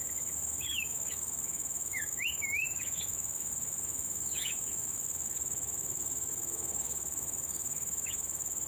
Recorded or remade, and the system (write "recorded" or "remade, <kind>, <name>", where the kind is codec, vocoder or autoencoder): remade, autoencoder, DAC-VAE